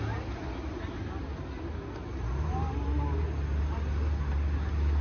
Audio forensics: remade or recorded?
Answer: recorded